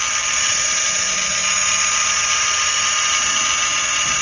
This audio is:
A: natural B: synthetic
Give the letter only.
A